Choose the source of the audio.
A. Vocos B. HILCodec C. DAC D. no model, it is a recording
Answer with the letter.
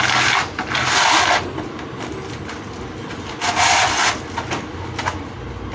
D